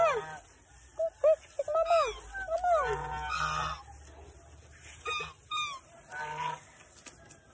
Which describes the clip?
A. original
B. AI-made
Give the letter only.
A